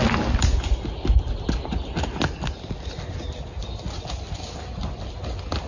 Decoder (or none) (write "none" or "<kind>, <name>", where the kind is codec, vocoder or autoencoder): none